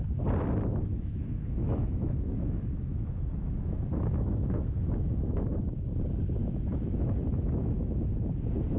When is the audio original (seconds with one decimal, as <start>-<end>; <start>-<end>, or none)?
0.0-0.9; 5.7-6.4; 8.0-8.8